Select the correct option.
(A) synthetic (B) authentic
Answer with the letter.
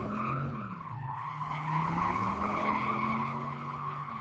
A